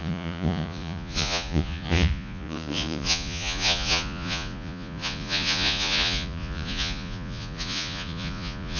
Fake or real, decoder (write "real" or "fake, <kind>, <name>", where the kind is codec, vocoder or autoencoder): fake, vocoder, Vocos